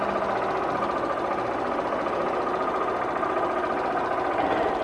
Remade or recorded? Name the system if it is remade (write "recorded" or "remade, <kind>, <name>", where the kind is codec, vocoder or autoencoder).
recorded